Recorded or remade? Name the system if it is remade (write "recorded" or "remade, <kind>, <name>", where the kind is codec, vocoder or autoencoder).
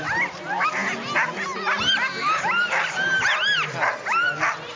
recorded